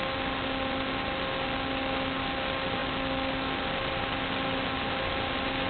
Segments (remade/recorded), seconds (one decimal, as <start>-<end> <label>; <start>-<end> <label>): 0.0-5.7 recorded